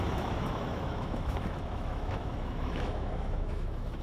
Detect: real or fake fake